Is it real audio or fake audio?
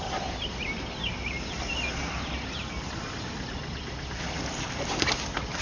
real